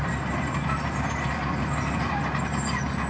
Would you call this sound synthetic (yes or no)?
no